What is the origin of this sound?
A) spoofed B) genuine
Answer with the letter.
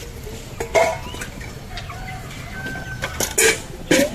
B